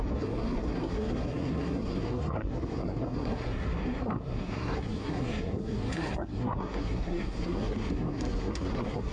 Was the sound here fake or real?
fake